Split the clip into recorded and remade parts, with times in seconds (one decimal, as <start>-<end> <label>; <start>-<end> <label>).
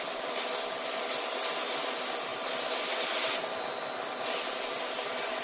0.0-5.4 recorded